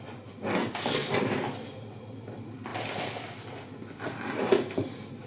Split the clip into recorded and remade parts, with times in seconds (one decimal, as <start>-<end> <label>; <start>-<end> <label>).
0.0-5.3 recorded